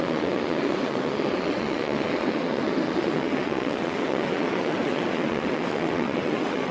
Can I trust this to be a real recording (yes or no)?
no